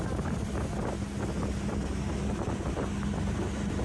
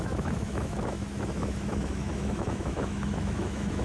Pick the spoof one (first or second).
second